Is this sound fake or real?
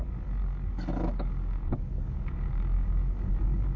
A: fake